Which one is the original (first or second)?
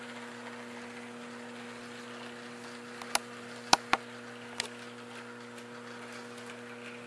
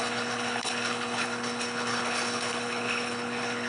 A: first